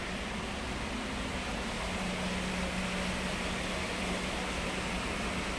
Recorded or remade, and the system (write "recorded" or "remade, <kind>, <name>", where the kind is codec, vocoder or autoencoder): recorded